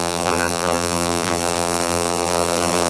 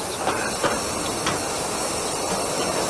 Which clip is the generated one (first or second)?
first